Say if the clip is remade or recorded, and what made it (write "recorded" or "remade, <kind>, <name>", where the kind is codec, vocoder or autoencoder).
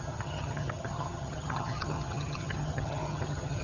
remade, vocoder, HiFi-GAN